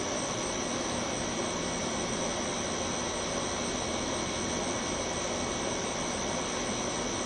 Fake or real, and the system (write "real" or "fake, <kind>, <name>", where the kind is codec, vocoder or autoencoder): real